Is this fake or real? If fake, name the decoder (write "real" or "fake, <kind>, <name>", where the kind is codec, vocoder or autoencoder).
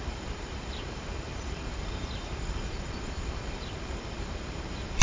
fake, vocoder, BigVGAN v2